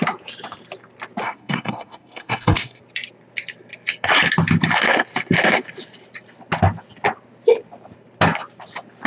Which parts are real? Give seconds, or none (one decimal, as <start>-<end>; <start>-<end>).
0.0-1.2; 2.8-9.1